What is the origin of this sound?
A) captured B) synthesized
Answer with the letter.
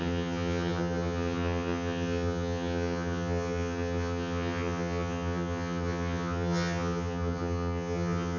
B